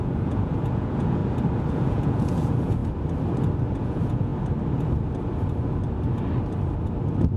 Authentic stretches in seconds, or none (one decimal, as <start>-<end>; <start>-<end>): 1.2-1.7; 2.8-3.7; 4.3-7.4